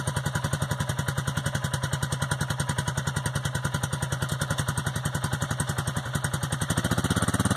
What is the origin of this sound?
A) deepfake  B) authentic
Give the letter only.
B